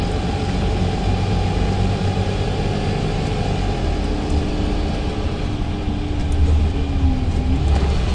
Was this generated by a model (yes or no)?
no